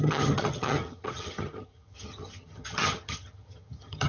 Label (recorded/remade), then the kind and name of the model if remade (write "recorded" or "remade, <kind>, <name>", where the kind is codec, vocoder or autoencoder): remade, vocoder, HiFi-GAN